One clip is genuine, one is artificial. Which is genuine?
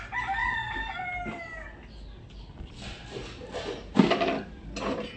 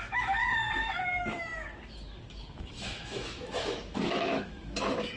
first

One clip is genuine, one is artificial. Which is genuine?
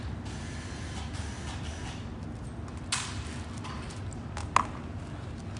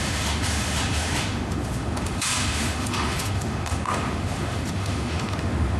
first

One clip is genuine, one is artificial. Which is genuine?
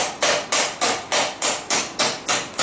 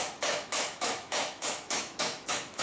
first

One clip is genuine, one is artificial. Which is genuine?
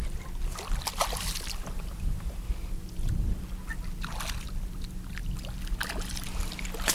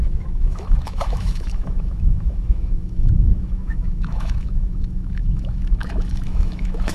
first